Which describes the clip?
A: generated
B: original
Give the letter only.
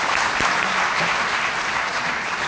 B